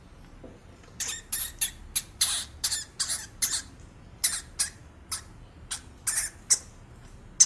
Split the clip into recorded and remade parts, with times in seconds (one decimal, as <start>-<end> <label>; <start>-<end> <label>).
0.0-7.5 recorded